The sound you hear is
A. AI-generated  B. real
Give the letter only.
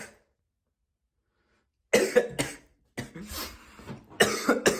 B